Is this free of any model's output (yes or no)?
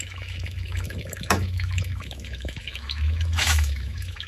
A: no